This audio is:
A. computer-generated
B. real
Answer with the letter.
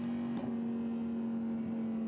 B